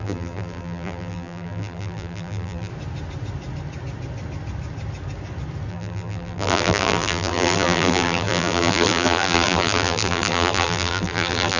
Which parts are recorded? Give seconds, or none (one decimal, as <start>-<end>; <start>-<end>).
2.7-5.7